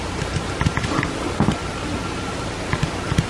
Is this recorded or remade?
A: recorded